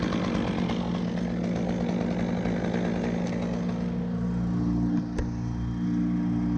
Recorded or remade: recorded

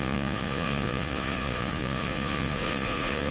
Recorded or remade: remade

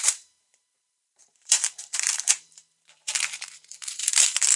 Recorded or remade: remade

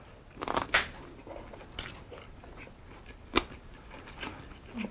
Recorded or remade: recorded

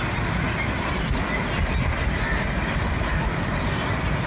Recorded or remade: recorded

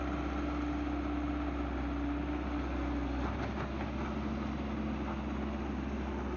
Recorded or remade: recorded